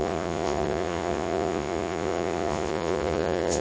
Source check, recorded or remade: remade